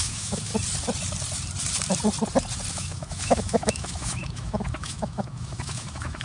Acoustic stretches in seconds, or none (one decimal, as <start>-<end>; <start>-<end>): 0.5-2.7